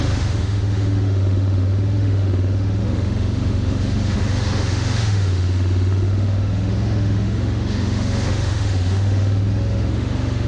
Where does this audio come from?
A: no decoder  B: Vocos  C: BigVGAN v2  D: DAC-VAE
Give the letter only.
D